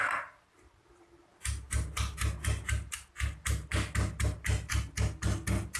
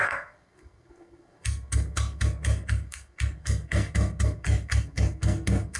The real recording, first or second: first